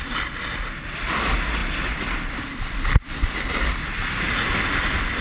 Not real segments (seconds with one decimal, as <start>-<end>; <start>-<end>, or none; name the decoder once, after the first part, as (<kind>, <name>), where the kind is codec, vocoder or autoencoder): none